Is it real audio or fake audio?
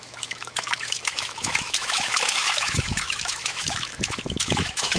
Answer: fake